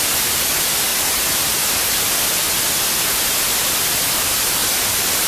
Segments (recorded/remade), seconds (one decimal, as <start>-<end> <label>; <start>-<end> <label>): 0.0-5.3 recorded